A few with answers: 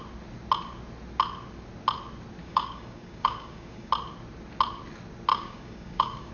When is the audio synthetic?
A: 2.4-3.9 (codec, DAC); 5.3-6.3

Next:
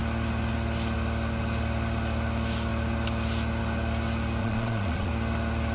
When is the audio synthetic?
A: 4.4-5.1 (vocoder, Vocos)

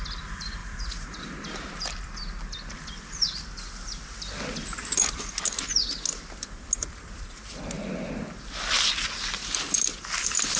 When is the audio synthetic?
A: 0.6-1.2 (vocoder, Vocos)

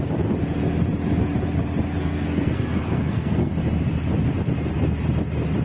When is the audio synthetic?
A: 2.0-3.5 (codec, SNAC)

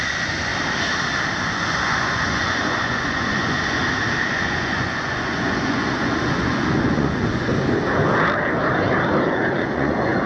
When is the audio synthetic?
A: 0.0-0.5 (vocoder, Vocos); 1.5-3.8; 4.3-7.5; 9.3-10.3

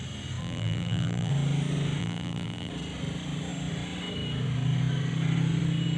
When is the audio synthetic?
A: 0.4-1.3 (vocoder, BigVGAN v2); 2.0-2.7

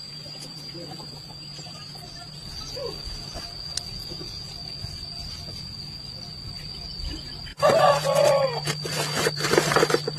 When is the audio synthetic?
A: none